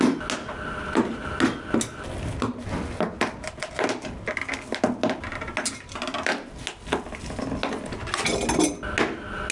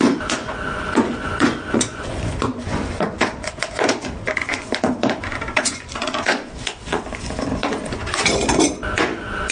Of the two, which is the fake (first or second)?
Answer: second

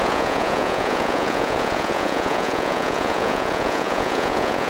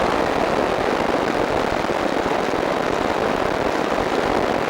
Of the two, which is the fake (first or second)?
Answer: first